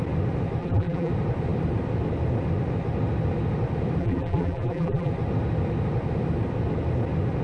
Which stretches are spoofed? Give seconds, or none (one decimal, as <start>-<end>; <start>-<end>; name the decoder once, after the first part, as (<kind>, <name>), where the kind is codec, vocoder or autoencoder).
0.6-1.1 (vocoder, BigVGAN v2); 4.0-5.1